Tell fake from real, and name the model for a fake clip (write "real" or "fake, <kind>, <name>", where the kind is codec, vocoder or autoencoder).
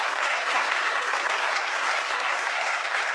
fake, codec, SNAC